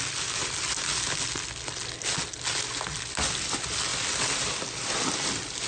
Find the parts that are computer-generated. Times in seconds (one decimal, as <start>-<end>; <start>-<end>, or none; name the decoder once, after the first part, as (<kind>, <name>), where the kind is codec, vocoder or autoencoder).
none